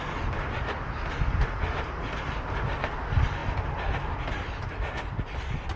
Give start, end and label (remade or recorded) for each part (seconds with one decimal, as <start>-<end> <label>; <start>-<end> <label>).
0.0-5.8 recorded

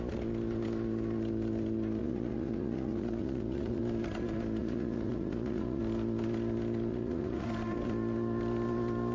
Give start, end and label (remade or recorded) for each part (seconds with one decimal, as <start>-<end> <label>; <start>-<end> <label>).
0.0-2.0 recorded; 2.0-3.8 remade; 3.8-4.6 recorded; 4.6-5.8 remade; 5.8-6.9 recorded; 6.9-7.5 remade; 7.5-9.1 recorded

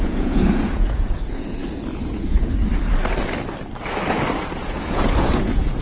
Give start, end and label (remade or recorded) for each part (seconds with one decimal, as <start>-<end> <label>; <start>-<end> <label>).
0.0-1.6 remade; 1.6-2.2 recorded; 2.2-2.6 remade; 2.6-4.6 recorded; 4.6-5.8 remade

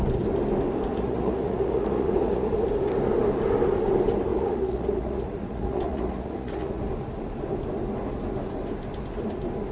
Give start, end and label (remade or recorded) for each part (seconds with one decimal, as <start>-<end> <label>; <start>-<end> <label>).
0.0-0.9 recorded; 0.9-2.5 remade; 2.5-4.3 recorded; 4.3-6.8 remade; 6.8-9.7 recorded

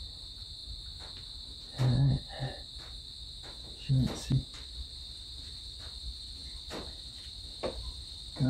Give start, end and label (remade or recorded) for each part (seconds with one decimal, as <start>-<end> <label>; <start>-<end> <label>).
0.0-8.5 recorded

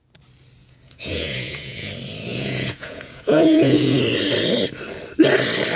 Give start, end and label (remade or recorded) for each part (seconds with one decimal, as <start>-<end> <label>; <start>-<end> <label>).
0.0-0.6 recorded; 0.6-1.9 remade; 1.9-2.3 recorded; 2.3-4.0 remade; 4.0-5.8 recorded

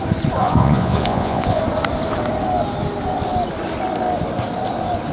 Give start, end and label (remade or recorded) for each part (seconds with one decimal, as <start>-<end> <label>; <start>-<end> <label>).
0.0-0.4 recorded; 0.4-1.6 remade; 1.6-5.1 recorded